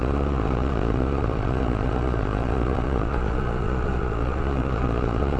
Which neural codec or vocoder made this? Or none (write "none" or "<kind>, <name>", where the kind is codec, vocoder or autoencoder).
vocoder, Vocos